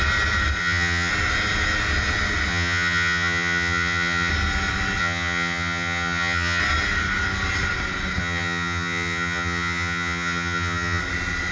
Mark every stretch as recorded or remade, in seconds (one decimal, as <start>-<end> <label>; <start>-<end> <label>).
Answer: 0.0-0.6 recorded; 0.6-1.1 remade; 1.1-2.5 recorded; 2.5-4.3 remade; 4.3-5.0 recorded; 5.0-6.6 remade; 6.6-8.2 recorded; 8.2-11.0 remade; 11.0-11.5 recorded